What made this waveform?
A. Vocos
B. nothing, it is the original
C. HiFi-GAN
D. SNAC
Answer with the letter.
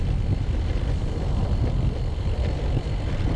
B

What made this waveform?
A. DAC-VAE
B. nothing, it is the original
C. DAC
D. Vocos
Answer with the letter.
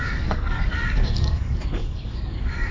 C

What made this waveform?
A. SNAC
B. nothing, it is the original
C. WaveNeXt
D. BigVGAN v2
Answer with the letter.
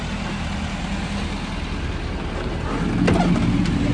B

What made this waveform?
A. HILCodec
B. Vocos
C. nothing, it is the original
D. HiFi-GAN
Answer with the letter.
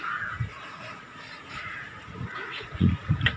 B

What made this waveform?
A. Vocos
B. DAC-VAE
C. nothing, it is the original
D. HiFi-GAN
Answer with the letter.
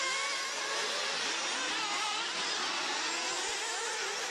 C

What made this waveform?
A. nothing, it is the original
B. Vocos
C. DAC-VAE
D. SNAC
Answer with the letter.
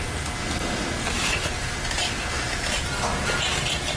A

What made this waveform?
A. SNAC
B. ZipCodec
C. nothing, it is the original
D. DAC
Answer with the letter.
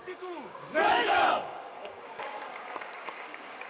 D